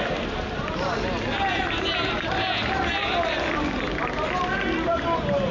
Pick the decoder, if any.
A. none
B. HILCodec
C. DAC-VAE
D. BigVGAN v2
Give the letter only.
A